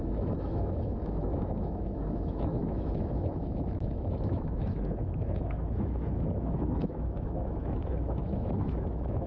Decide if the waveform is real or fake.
fake